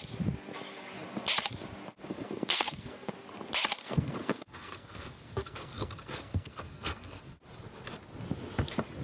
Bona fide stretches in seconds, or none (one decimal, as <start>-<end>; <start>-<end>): 0.0-2.1; 3.1-3.8; 7.2-9.0